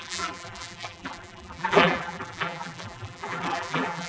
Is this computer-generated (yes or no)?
yes